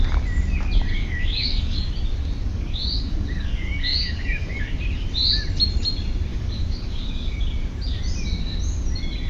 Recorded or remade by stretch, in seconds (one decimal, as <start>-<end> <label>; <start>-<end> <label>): 0.0-0.9 recorded; 0.9-1.9 remade; 1.9-2.5 recorded; 2.5-4.7 remade; 4.7-6.3 recorded; 6.3-7.4 remade; 7.4-9.3 recorded